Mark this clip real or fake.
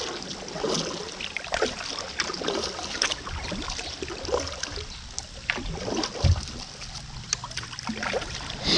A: real